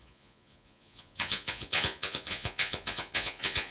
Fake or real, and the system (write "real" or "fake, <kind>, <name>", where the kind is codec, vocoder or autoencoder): fake, vocoder, Vocos